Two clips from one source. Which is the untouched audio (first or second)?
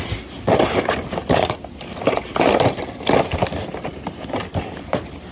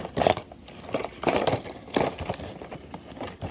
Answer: second